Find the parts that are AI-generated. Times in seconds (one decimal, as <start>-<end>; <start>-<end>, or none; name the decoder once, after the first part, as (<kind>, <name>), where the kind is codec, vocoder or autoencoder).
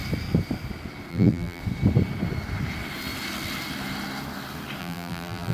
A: 1.1-1.6 (vocoder, BigVGAN v2); 4.8-5.5